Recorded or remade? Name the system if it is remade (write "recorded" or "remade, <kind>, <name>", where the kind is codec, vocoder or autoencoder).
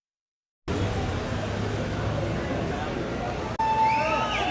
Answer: recorded